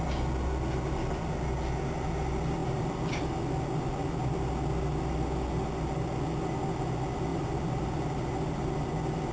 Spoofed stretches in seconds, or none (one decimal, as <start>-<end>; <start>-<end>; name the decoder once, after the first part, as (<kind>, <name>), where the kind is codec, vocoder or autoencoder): 2.6-3.3 (vocoder, BigVGAN v2); 7.3-8.8